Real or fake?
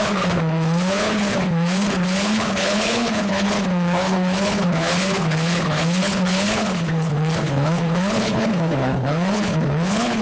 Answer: fake